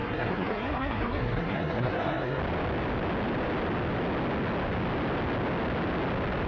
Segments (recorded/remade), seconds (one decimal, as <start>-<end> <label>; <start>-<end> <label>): 0.0-2.4 remade; 2.4-6.5 recorded